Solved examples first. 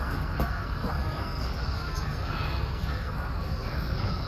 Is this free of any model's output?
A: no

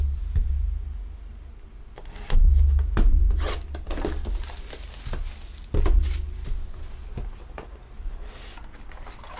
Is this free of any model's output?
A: yes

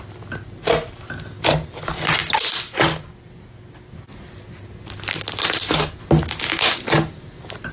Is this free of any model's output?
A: yes